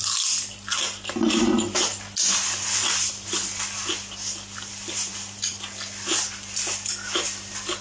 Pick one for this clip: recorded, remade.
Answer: recorded